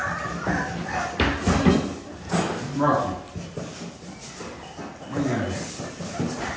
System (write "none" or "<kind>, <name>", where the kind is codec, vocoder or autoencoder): none